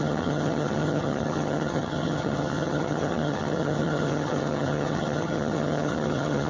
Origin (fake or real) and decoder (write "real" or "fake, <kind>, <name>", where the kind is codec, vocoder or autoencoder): fake, vocoder, HiFi-GAN